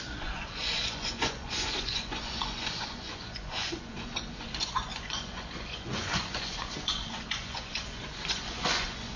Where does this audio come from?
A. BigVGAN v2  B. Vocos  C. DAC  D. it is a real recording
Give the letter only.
B